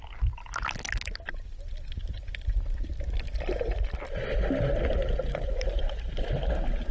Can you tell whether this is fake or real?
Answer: real